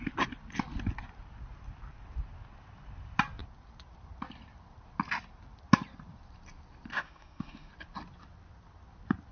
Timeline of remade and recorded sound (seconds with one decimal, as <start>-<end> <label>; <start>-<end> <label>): 0.0-6.9 recorded; 6.9-7.7 remade; 7.7-9.3 recorded